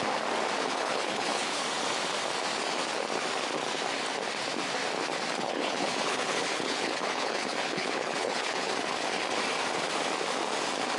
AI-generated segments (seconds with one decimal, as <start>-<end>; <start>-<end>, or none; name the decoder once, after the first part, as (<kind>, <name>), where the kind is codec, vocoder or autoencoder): 0.6-1.6 (codec, HILCodec); 5.4-8.7